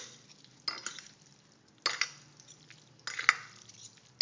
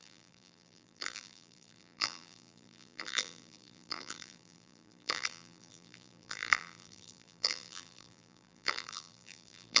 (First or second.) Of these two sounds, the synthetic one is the second